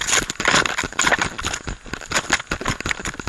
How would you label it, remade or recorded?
recorded